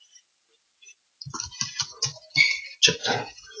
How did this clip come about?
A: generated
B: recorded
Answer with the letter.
B